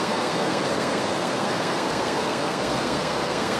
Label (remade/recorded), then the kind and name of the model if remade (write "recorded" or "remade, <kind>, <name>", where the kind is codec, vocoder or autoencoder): remade, codec, SNAC